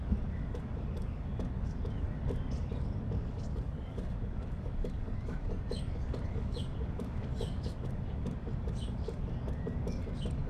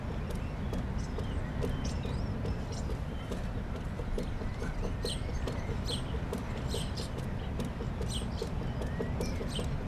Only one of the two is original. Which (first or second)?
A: second